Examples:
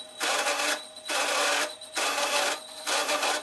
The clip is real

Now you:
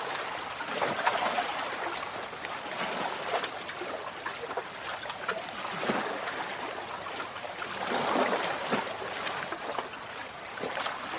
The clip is real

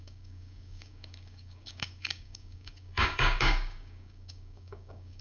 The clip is fake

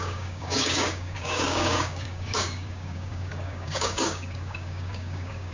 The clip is fake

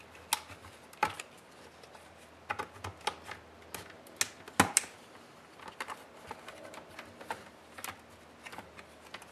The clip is real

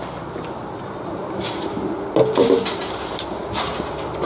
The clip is real